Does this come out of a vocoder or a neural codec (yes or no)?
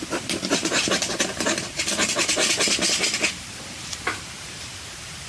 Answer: yes